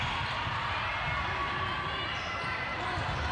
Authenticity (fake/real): real